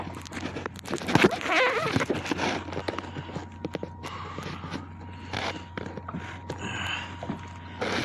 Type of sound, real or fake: real